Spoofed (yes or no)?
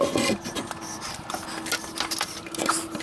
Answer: no